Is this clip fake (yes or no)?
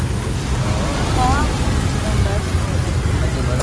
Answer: no